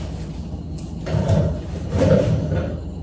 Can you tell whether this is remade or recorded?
recorded